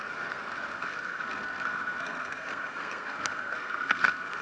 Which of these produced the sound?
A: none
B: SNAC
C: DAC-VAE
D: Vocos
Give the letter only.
B